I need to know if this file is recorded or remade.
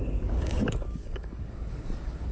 remade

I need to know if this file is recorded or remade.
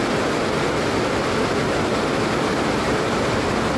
recorded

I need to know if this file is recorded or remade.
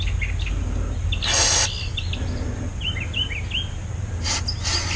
recorded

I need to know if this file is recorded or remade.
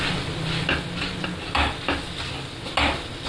recorded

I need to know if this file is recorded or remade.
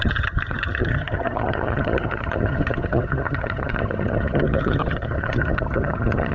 remade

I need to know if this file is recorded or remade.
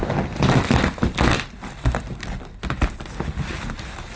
recorded